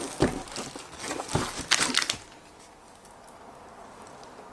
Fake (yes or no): no